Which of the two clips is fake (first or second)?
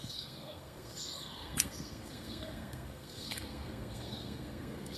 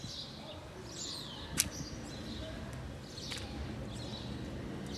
first